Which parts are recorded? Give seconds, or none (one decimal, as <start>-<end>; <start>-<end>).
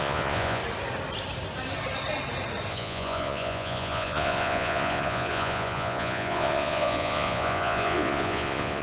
0.6-2.7